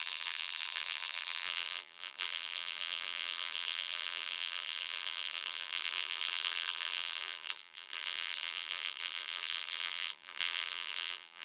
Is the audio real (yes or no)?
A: no